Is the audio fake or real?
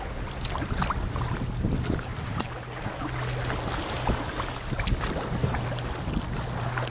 real